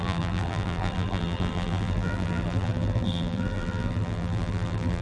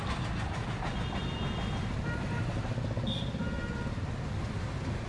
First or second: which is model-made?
first